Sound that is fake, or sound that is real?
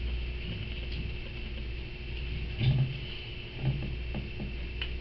real